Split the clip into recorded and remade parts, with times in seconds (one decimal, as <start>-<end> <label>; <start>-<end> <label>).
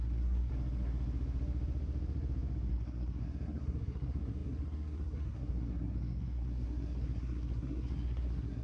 0.0-0.5 remade; 0.5-2.7 recorded; 2.7-8.6 remade